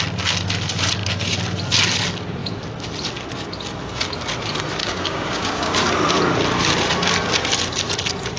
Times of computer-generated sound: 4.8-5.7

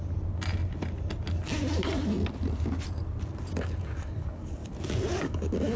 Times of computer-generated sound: 3.5-4.6; 5.1-5.8

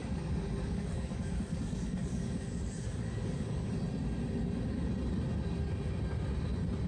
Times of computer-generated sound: 0.0-3.7

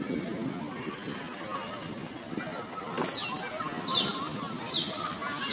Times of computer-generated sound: none